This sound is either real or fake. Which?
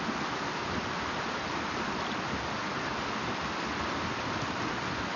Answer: real